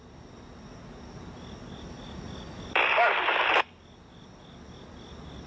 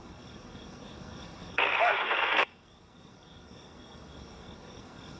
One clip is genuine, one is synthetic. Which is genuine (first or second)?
first